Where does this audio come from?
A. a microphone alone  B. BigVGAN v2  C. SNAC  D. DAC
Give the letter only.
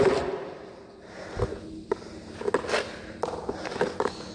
A